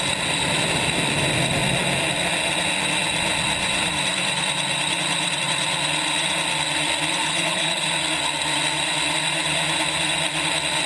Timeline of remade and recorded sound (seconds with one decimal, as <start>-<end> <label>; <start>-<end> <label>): 0.0-7.2 recorded; 7.2-7.8 remade; 7.8-10.9 recorded